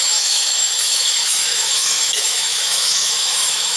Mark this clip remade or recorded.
remade